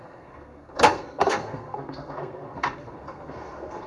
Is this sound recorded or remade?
remade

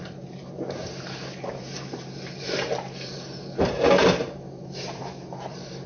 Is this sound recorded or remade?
remade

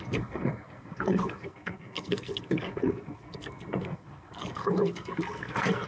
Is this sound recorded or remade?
remade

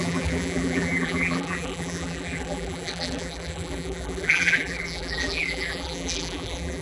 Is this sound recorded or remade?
remade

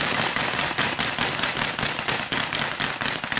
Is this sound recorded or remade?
recorded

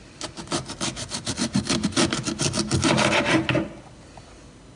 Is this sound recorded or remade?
recorded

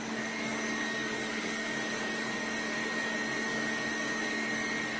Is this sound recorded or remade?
remade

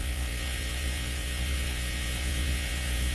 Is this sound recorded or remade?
remade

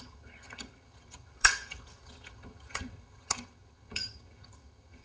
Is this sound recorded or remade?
remade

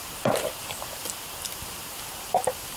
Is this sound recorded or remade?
remade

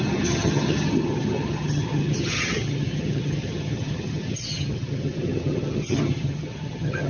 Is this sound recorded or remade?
remade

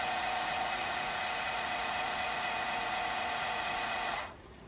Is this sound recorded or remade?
remade